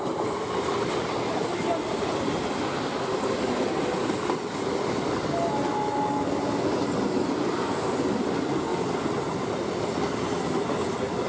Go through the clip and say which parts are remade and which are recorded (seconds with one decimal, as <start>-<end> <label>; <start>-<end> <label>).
0.0-11.3 recorded